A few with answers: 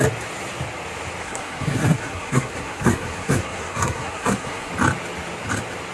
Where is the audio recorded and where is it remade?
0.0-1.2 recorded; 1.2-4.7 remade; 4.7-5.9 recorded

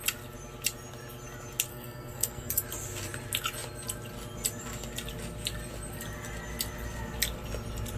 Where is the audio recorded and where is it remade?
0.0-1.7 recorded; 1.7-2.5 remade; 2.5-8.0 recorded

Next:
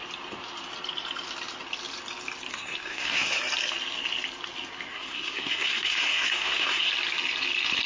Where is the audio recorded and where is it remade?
0.0-2.5 recorded; 2.5-3.4 remade; 3.4-4.9 recorded; 4.9-6.9 remade; 6.9-7.9 recorded

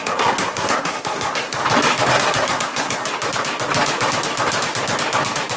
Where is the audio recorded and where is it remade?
0.0-1.6 remade; 1.6-2.1 recorded; 2.1-3.0 remade; 3.0-5.6 recorded